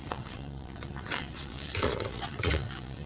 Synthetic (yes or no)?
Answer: yes